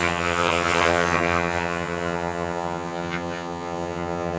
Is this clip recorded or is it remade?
remade